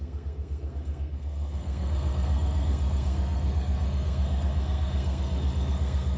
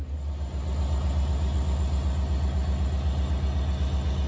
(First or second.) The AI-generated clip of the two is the first